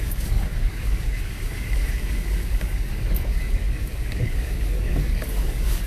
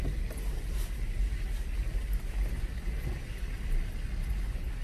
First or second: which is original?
second